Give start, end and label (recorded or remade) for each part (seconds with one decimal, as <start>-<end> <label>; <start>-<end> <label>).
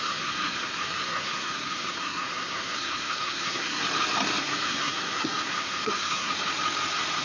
0.0-3.8 remade; 3.8-4.4 recorded; 4.4-6.3 remade; 6.3-7.2 recorded